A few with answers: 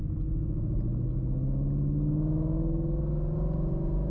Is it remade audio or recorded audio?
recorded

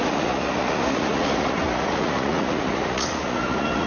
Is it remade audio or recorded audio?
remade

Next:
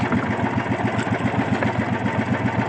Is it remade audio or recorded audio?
recorded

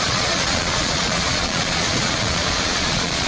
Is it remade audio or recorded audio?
remade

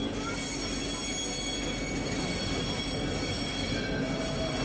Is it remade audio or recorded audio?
recorded